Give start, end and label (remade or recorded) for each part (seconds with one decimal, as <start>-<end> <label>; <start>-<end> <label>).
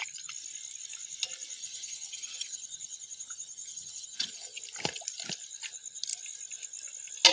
0.0-1.6 recorded; 1.6-4.6 remade; 4.6-7.3 recorded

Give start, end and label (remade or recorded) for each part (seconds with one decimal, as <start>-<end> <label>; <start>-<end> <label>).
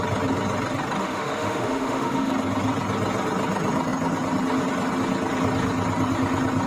0.0-1.0 recorded; 1.0-2.3 remade; 2.3-6.7 recorded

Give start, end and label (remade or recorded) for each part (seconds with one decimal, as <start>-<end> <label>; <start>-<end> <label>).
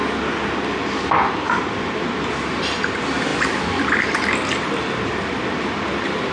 0.0-6.3 recorded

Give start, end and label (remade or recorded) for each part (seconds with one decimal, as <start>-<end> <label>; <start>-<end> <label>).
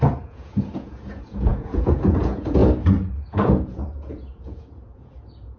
0.0-2.6 remade; 2.6-3.3 recorded; 3.3-5.6 remade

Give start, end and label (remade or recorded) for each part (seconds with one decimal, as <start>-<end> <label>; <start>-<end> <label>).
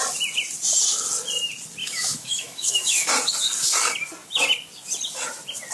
0.0-1.8 recorded; 1.8-3.1 remade; 3.1-5.7 recorded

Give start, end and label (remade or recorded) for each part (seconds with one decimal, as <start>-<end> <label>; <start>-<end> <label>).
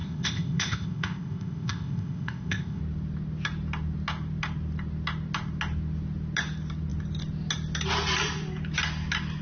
0.0-2.8 remade; 2.8-9.4 recorded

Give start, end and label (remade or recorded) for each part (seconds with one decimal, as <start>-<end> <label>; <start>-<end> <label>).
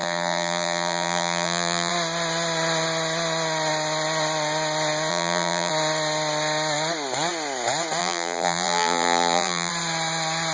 0.0-1.9 remade; 1.9-5.1 recorded; 5.1-5.7 remade; 5.7-8.0 recorded; 8.0-9.7 remade; 9.7-10.5 recorded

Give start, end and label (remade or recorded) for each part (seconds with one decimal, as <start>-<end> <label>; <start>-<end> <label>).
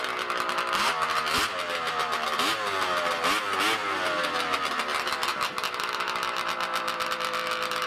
0.0-7.9 recorded